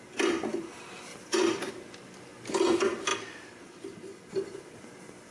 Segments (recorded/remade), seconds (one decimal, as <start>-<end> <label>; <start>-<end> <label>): 0.0-1.1 recorded; 1.1-1.7 remade; 1.7-5.3 recorded